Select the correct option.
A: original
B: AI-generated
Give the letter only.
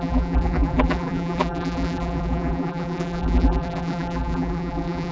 B